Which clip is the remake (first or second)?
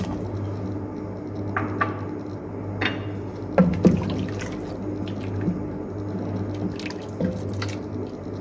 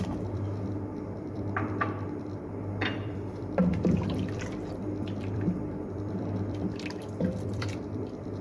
second